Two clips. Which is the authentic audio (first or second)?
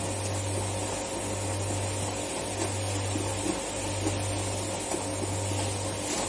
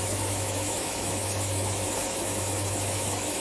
first